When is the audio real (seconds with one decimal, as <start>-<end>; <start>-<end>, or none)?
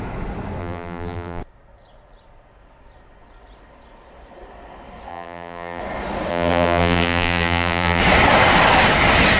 0.0-0.6; 1.4-5.1; 5.8-6.3; 8.0-9.4